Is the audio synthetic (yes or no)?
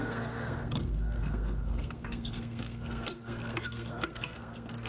yes